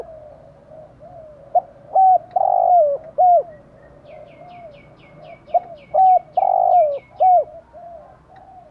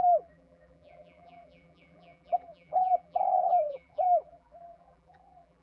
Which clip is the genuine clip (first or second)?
first